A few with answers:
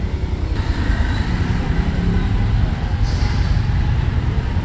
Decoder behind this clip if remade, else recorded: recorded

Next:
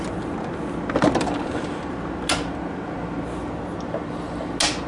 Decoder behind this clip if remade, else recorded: recorded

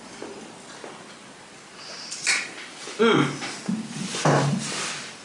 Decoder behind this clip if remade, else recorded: recorded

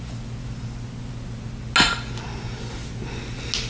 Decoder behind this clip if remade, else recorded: recorded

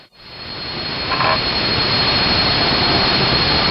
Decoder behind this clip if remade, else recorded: remade, vocoder, BigVGAN v2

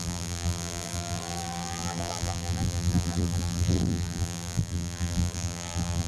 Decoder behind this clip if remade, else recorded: remade, vocoder, BigVGAN v2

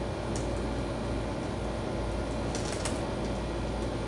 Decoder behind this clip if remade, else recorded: recorded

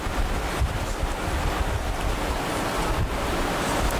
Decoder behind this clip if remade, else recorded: recorded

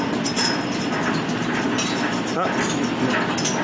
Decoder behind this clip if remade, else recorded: recorded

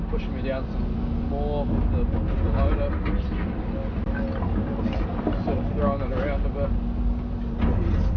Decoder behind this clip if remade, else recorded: recorded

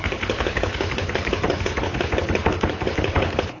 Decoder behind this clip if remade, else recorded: remade, codec, HILCodec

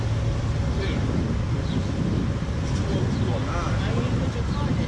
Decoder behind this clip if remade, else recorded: recorded